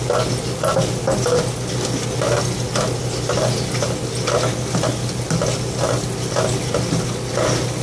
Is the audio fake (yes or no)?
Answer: no